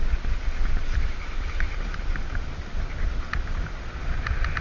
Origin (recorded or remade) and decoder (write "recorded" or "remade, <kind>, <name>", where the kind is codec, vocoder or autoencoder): recorded